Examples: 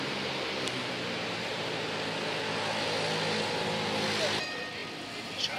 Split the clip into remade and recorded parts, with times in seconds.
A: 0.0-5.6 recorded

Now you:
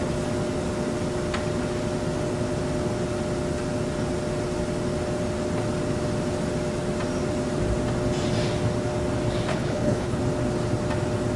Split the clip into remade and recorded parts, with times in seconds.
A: 0.0-9.5 recorded; 9.5-10.2 remade; 10.2-11.4 recorded

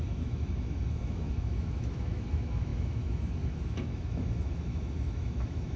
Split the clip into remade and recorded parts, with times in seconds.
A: 0.0-5.8 remade